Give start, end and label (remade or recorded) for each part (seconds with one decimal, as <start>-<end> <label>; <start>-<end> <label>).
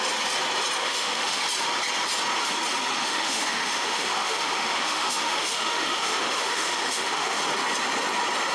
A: 0.0-0.8 recorded; 0.8-1.4 remade; 1.4-3.0 recorded; 3.0-7.4 remade; 7.4-8.5 recorded